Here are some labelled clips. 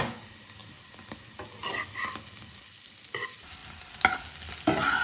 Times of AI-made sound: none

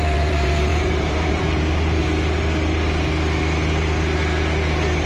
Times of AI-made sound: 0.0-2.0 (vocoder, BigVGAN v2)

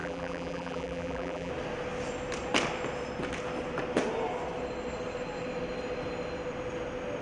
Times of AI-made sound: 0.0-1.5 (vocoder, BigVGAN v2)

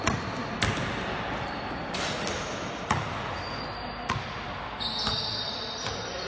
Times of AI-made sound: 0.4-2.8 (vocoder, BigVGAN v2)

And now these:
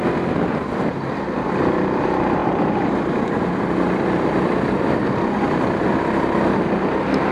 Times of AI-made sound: 2.4-6.2 (vocoder, BigVGAN v2)